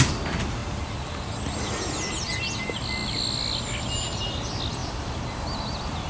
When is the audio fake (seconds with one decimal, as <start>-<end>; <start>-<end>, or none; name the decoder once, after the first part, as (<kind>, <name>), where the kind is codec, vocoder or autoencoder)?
none